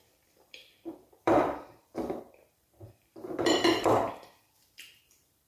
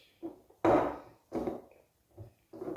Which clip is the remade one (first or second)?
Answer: first